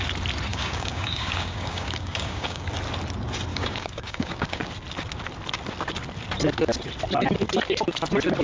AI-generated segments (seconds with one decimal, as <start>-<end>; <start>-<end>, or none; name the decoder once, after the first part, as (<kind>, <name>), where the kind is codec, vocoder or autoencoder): 0.5-2.7 (codec, DAC); 3.5-4.7